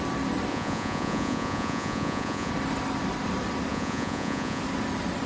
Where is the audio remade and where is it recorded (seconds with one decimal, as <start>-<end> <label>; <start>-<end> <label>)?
0.0-0.5 recorded; 0.5-2.5 remade; 2.5-3.7 recorded; 3.7-4.6 remade; 4.6-5.3 recorded